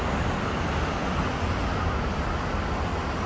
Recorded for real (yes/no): yes